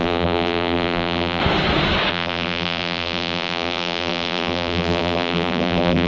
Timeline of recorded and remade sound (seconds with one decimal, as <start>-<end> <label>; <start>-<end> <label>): 0.0-1.4 remade; 1.4-2.1 recorded; 2.1-6.1 remade